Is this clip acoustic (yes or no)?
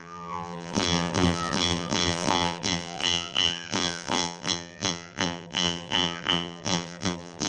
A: no